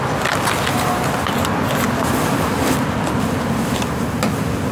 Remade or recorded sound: recorded